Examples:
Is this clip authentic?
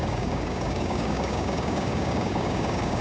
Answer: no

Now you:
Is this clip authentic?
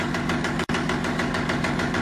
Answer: no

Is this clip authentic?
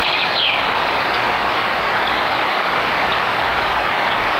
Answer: no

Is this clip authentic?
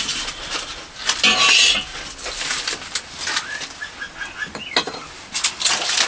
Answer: yes